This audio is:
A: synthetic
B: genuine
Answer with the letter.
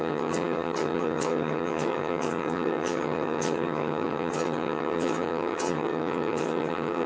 A